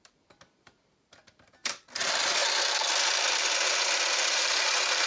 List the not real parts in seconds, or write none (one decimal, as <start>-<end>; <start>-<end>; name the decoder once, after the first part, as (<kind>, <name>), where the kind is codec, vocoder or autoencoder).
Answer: 0.0-2.4 (vocoder, BigVGAN v2); 4.1-5.1